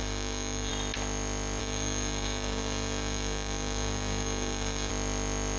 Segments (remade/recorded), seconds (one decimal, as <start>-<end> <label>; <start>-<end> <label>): 0.0-0.7 remade; 0.7-1.6 recorded; 1.6-4.9 remade; 4.9-5.6 recorded